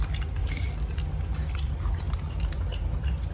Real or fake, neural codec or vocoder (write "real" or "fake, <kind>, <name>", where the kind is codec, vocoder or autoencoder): real